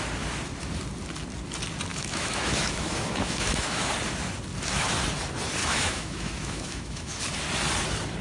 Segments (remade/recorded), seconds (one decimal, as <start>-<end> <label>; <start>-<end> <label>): 0.0-1.9 recorded; 1.9-3.9 remade; 3.9-5.6 recorded; 5.6-7.2 remade; 7.2-8.2 recorded